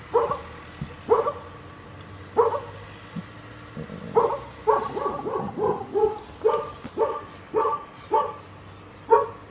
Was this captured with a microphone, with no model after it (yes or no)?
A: yes